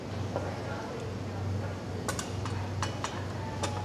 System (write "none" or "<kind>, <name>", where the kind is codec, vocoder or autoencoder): none